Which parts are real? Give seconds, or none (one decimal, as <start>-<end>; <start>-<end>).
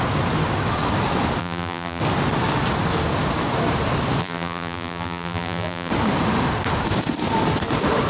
0.0-1.4; 2.0-4.2; 5.9-8.1